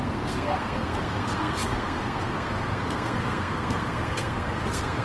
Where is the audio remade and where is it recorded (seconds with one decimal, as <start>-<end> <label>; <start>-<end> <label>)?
0.0-5.0 remade

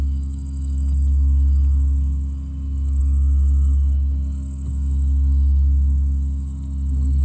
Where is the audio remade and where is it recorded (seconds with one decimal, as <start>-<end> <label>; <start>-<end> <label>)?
0.0-7.2 recorded